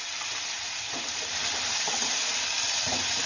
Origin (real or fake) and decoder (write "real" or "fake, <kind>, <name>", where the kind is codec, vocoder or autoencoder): real